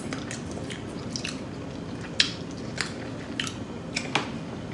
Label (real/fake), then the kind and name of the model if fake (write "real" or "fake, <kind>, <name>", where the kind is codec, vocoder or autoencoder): real